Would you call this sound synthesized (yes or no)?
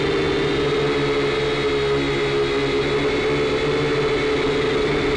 no